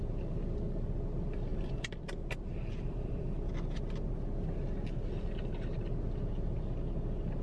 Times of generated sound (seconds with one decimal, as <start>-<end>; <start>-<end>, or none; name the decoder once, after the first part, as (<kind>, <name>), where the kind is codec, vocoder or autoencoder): 1.5-3.5 (vocoder, BigVGAN v2)